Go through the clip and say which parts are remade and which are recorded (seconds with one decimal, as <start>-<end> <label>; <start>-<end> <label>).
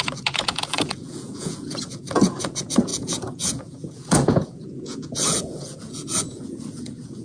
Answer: 0.0-7.2 remade